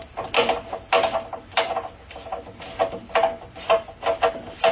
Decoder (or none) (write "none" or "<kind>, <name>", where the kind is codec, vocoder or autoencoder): none